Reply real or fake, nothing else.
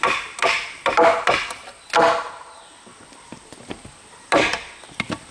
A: real